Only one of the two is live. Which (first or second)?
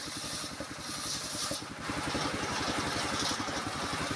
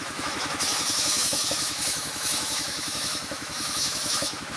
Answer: first